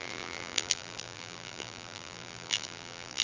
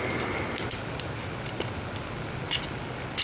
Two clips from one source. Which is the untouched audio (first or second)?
second